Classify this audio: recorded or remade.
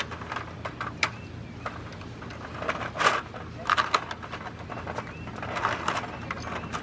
recorded